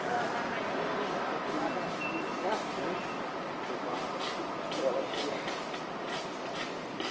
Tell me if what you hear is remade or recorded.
recorded